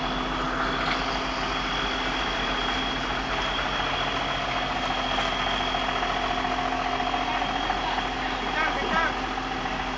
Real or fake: real